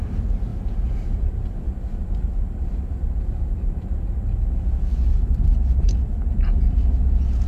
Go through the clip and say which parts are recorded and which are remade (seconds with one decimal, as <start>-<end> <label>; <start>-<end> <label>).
0.0-7.5 recorded

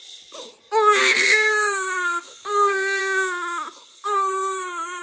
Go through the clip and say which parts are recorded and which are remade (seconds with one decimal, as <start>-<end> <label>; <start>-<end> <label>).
0.0-1.0 recorded; 1.0-3.0 remade; 3.0-3.9 recorded; 3.9-5.0 remade

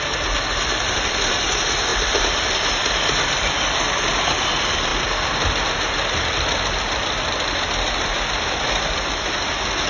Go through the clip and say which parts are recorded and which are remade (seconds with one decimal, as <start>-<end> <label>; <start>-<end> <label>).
0.0-1.9 recorded; 1.9-4.2 remade; 4.2-9.9 recorded

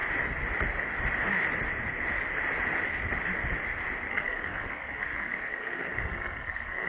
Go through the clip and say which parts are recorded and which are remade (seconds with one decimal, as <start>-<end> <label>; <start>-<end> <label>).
0.0-4.1 recorded; 4.1-6.9 remade